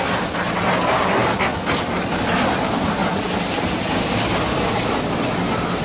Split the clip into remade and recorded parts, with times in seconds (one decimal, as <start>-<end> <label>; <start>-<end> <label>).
0.0-5.8 recorded